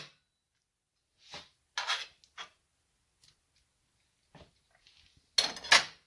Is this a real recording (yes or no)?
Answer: yes